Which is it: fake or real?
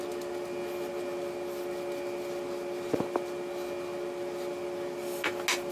real